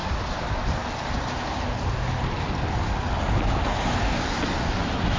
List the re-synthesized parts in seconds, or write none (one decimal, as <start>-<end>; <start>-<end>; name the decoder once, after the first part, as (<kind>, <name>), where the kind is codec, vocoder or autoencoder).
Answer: none